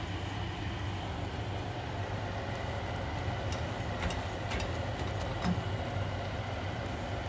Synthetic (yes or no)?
no